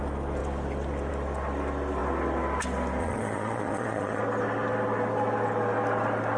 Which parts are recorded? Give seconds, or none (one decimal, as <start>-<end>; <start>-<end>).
0.0-3.0; 4.2-6.4